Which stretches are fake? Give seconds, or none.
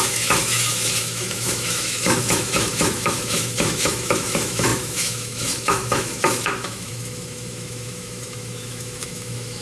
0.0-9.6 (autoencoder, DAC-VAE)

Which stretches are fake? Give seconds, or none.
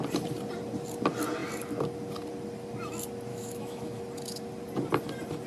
3.3-4.0 (autoencoder, DAC-VAE)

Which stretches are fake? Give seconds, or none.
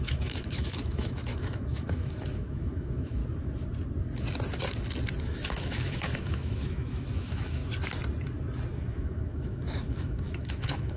0.0-3.2 (autoencoder, DAC-VAE); 5.2-7.6; 8.7-11.0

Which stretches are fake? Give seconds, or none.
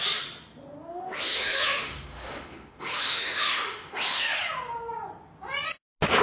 0.9-4.4 (autoencoder, DAC-VAE)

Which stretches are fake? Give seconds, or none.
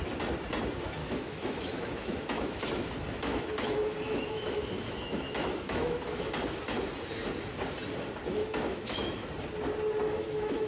1.0-2.9 (autoencoder, DAC-VAE); 3.3-6.3; 8.4-9.3; 10.0-10.7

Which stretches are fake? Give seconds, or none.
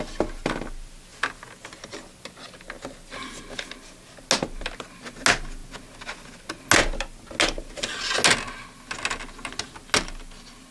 none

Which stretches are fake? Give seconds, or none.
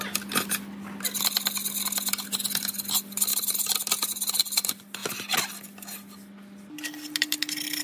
none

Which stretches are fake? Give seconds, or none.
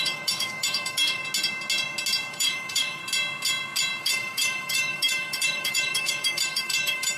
0.0-1.2 (autoencoder, DAC-VAE); 2.3-3.0; 4.0-7.2